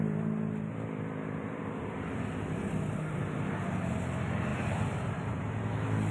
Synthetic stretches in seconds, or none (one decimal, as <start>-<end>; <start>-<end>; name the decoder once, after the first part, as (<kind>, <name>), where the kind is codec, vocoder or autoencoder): 1.6-3.2 (vocoder, BigVGAN v2); 4.5-5.3